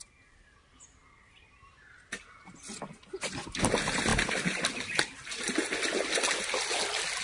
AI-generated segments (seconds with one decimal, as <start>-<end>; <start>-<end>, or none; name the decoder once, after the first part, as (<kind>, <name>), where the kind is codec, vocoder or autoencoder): none